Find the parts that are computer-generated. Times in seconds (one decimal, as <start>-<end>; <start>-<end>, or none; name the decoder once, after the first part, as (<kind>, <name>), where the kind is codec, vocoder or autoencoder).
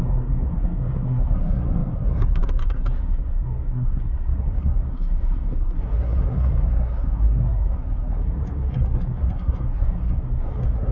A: 0.0-10.9 (codec, SNAC)